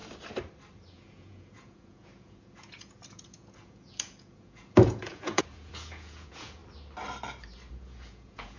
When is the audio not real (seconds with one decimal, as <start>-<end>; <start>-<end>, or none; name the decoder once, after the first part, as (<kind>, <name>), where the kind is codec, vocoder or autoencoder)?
0.9-6.6 (vocoder, Vocos); 7.7-8.6